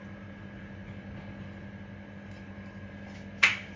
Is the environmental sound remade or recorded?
recorded